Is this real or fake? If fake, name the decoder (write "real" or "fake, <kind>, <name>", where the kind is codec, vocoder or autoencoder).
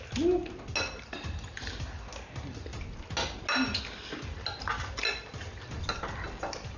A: real